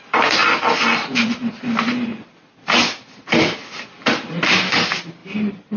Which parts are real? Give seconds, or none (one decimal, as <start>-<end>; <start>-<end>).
0.0-5.8